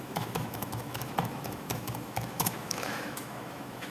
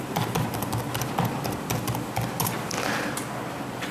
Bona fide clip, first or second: second